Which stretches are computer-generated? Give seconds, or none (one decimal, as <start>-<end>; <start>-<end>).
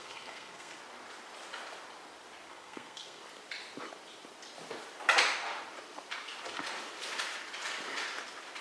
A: 0.0-0.8; 2.5-3.2